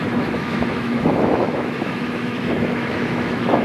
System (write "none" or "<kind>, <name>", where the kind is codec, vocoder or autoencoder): autoencoder, DAC-VAE